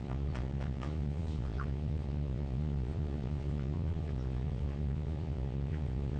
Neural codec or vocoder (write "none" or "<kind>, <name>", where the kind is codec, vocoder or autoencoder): vocoder, Vocos